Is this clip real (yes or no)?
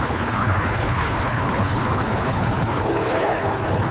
no